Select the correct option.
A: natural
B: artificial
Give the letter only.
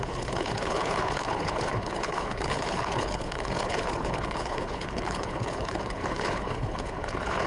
B